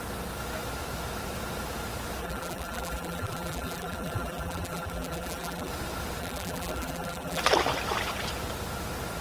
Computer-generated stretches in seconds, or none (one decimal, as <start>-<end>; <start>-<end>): 2.2-5.7; 6.2-7.4